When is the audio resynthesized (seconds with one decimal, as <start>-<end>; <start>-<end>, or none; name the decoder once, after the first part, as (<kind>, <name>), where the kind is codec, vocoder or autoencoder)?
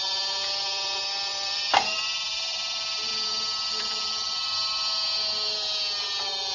1.3-3.1 (vocoder, BigVGAN v2); 3.7-4.5